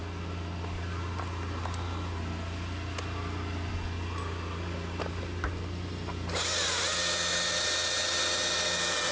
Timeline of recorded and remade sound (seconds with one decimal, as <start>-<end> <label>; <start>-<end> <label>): 0.0-9.1 recorded